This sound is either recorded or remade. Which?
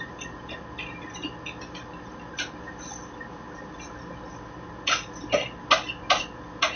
recorded